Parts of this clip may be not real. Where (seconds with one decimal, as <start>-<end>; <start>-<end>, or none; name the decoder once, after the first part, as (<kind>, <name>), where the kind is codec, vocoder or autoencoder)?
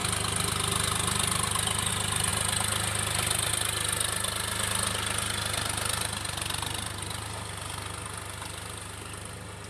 none